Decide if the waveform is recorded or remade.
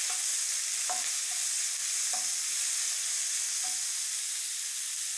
recorded